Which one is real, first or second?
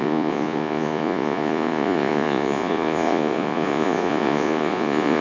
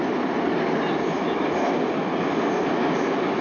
second